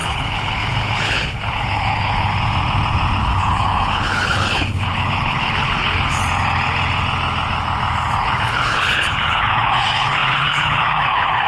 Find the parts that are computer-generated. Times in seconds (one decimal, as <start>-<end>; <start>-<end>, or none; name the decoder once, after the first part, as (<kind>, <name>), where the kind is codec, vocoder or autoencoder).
0.0-2.3 (codec, HILCodec); 3.2-6.2; 8.2-11.5